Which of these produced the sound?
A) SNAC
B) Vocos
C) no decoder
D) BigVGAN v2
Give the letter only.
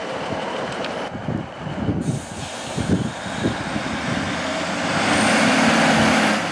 C